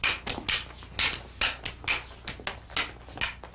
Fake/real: real